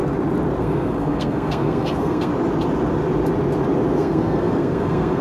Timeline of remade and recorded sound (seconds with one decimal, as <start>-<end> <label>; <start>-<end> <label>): 0.0-0.6 recorded; 0.6-2.3 remade; 2.3-3.9 recorded; 3.9-5.2 remade